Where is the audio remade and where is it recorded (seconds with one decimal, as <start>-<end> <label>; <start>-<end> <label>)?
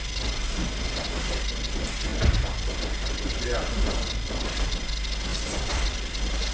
0.0-2.1 recorded; 2.1-4.3 remade; 4.3-5.3 recorded; 5.3-6.5 remade